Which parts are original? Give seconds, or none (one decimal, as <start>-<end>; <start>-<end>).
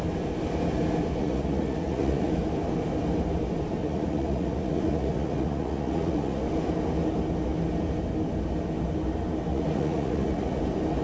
0.0-1.2; 2.3-3.8; 6.4-9.5; 10.6-11.0